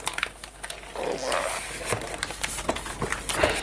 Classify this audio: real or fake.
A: real